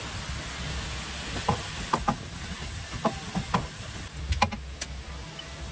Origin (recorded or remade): recorded